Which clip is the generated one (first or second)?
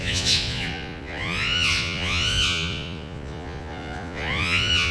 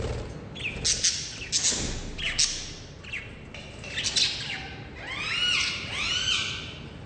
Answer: first